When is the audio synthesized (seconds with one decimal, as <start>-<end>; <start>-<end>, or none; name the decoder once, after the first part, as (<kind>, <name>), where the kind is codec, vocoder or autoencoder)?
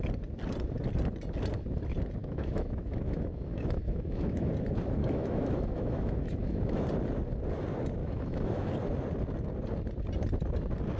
2.2-4.5 (autoencoder, DAC-VAE); 5.0-6.8; 8.0-8.7